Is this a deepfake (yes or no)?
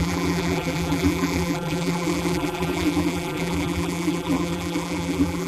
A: yes